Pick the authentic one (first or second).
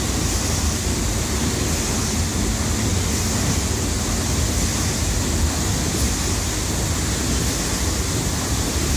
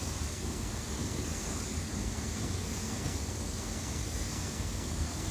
first